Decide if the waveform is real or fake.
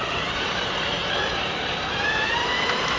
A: fake